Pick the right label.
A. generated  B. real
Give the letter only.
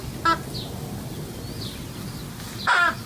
B